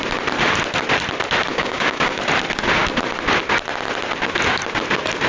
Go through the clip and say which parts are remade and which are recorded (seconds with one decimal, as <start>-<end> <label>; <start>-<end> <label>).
0.0-1.5 recorded; 1.5-2.2 remade; 2.2-5.3 recorded